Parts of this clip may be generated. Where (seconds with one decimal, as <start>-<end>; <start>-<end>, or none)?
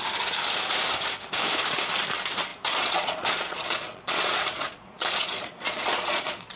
2.5-6.6